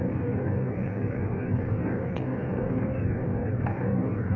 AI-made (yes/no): yes